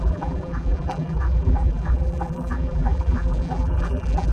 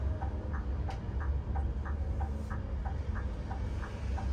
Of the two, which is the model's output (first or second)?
first